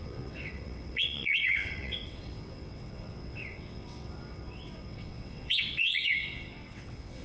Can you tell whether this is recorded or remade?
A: remade